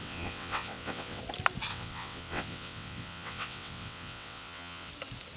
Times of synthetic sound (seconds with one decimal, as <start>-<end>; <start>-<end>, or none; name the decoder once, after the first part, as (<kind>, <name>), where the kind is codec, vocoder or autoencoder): 0.0-1.2 (vocoder, WaveNeXt); 1.7-4.9